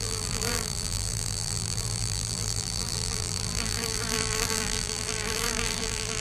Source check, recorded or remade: remade